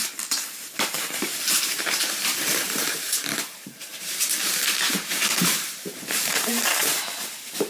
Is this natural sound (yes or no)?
no